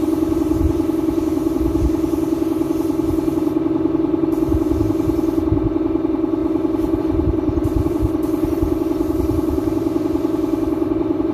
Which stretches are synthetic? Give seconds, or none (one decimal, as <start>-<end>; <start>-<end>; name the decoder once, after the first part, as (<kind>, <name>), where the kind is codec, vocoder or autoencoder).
0.0-6.4 (vocoder, BigVGAN v2); 7.0-11.3